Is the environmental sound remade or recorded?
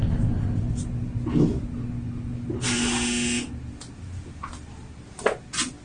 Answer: recorded